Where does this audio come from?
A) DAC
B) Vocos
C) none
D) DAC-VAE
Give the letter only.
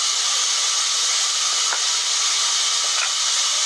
C